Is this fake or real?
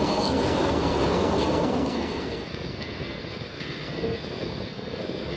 fake